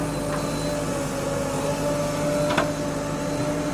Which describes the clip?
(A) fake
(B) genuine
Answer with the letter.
B